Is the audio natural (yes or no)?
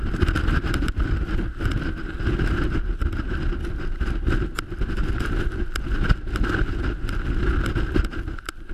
yes